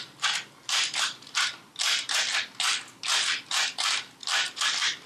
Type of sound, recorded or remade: recorded